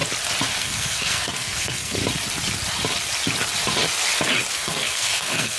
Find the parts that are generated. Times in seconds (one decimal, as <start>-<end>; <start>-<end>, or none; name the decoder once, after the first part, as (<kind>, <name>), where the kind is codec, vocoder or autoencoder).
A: 0.6-2.0 (codec, SNAC); 4.5-5.6

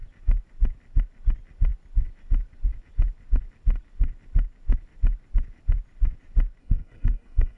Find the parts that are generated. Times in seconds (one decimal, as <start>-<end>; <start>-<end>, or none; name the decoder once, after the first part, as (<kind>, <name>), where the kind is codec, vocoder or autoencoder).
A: 6.6-7.6 (codec, SNAC)

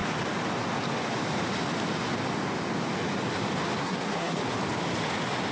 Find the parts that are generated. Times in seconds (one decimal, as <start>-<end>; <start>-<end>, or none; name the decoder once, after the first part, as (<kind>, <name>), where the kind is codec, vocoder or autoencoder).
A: 3.8-4.4 (codec, SNAC)

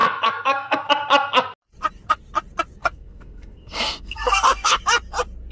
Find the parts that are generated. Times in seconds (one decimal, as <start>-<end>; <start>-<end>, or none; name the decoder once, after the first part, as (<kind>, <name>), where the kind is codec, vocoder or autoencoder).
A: 0.0-0.8 (codec, SNAC); 2.8-4.8

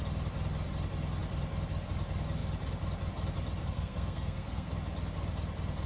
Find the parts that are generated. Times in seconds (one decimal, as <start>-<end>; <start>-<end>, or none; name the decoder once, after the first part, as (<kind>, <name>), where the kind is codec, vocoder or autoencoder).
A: 3.6-4.7 (codec, SNAC)